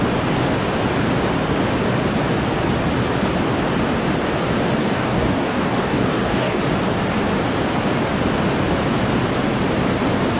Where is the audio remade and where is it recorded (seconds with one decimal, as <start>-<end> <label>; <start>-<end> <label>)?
0.0-4.8 recorded; 4.8-6.6 remade; 6.6-10.4 recorded